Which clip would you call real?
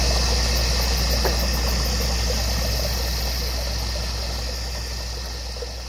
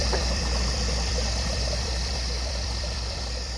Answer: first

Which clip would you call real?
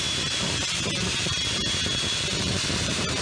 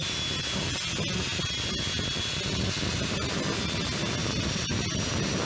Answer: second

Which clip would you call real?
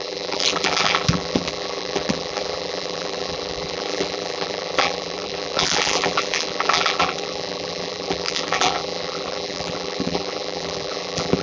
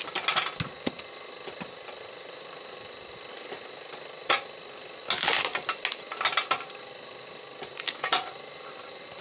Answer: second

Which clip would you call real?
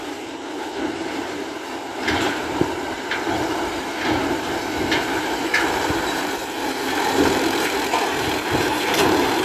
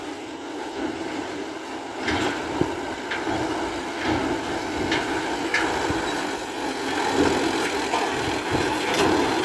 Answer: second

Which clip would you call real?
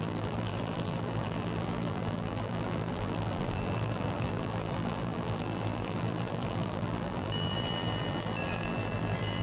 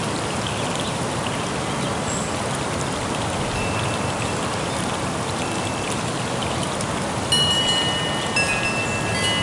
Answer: second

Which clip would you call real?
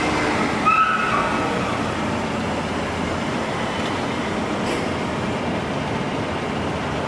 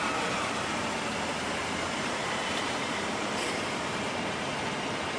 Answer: first